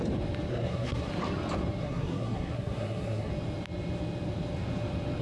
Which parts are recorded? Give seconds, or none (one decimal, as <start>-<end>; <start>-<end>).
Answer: 0.0-0.5; 1.1-1.8; 3.3-5.2